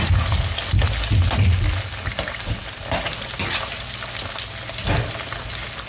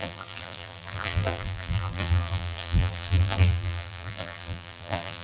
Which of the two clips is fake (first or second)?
second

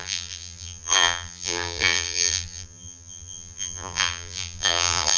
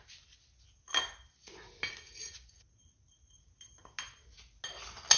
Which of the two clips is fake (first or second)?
first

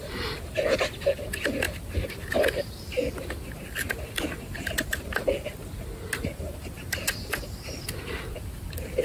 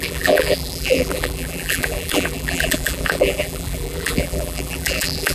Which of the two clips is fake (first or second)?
second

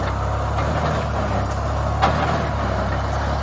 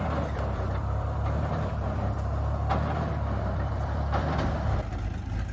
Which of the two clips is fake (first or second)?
second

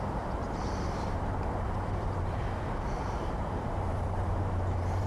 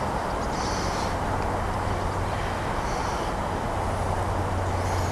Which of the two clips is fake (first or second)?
first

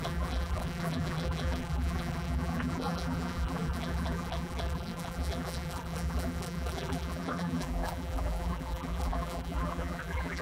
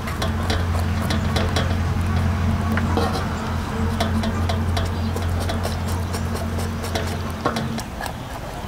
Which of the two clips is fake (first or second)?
first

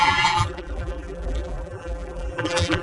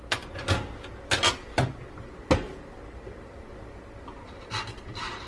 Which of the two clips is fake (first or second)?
first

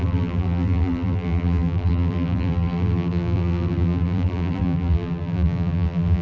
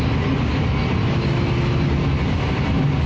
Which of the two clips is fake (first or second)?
first